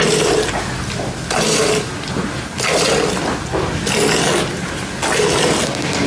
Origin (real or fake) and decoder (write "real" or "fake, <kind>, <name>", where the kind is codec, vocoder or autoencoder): real